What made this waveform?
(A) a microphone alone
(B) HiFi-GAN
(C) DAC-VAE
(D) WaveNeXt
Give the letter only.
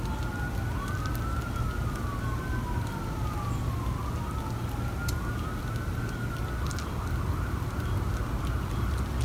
A